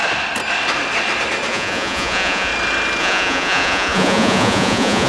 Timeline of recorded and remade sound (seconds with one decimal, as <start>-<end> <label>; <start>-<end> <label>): 0.0-1.5 recorded; 1.5-2.5 remade; 2.5-3.0 recorded; 3.0-5.1 remade